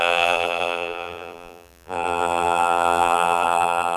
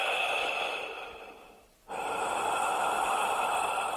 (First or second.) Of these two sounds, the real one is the second